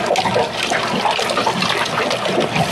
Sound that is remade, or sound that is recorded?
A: recorded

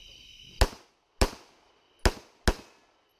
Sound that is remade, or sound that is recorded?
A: recorded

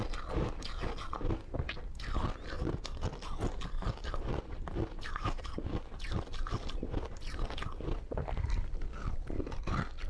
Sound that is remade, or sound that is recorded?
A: recorded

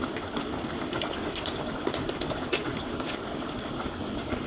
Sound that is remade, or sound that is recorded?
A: recorded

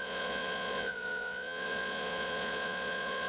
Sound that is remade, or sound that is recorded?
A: remade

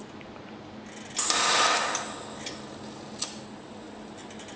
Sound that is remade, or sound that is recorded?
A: recorded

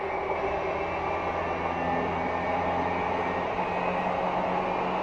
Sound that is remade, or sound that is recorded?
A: recorded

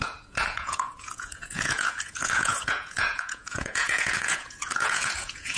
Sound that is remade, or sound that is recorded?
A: remade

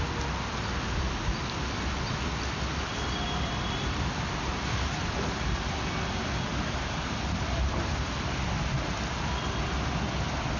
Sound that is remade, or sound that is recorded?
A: recorded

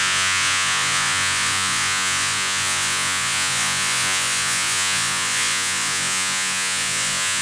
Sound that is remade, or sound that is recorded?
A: remade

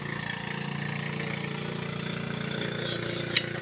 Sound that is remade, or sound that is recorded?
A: recorded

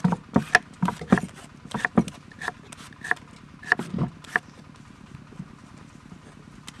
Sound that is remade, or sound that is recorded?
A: recorded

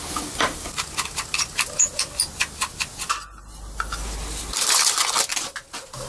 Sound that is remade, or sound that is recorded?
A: recorded